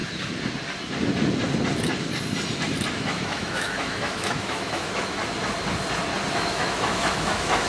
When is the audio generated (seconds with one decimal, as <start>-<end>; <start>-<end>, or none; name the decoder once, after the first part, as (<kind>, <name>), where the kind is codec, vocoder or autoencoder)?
2.9-5.2 (autoencoder, DAC-VAE); 6.3-7.7